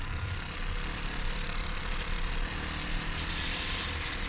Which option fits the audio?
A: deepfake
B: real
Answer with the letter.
A